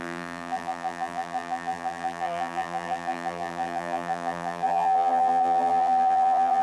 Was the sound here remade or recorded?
remade